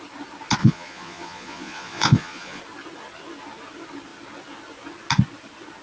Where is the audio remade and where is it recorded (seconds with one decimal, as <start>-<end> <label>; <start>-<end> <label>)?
0.0-0.6 recorded; 0.6-2.6 remade; 2.6-5.8 recorded

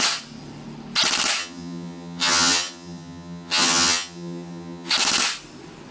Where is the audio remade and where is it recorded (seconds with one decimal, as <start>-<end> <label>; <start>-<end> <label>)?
0.0-1.4 recorded; 1.4-4.9 remade; 4.9-5.9 recorded

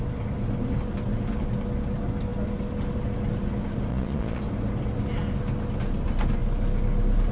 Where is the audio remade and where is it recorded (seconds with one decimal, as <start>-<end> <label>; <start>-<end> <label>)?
0.0-3.9 recorded; 3.9-4.4 remade; 4.4-7.3 recorded

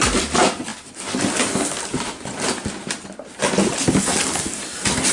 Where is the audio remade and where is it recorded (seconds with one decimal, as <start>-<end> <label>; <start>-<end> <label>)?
0.0-5.1 recorded

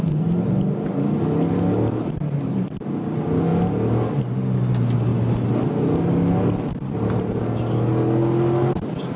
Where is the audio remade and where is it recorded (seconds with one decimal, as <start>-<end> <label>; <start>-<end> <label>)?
0.0-9.2 recorded

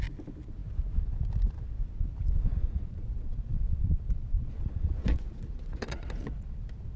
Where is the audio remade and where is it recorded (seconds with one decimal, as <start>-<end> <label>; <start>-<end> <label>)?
0.0-2.5 recorded; 2.5-6.6 remade; 6.6-7.0 recorded